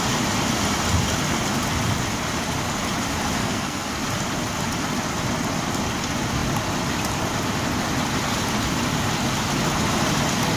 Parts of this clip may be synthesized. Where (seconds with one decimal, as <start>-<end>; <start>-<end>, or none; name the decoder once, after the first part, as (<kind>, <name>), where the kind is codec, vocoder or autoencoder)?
3.4-4.0 (codec, SNAC)